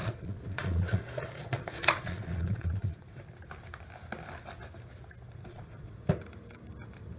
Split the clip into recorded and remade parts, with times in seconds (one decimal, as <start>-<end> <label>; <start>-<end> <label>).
0.0-3.2 remade; 3.2-5.5 recorded; 5.5-6.1 remade; 6.1-7.2 recorded